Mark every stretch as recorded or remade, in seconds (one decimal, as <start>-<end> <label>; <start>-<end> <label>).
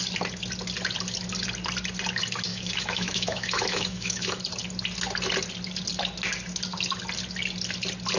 0.0-2.5 recorded; 2.5-4.4 remade; 4.4-8.2 recorded